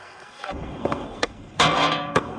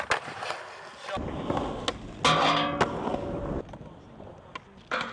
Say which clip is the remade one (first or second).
first